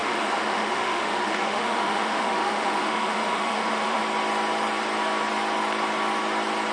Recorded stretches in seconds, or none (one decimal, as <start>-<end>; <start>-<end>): 4.0-6.7

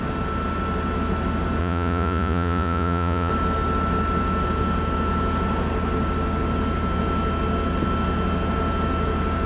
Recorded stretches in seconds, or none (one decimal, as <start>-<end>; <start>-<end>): 0.0-1.6; 3.3-9.5

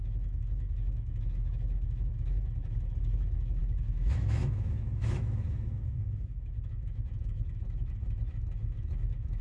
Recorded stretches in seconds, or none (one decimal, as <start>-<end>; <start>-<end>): none